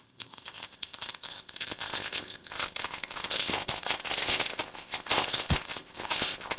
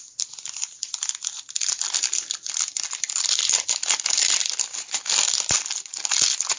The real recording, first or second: second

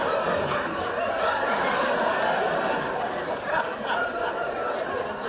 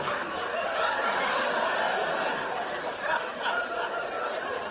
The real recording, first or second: first